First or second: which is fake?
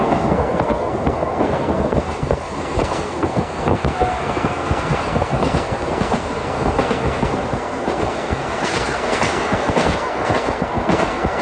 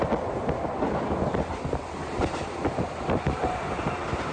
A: first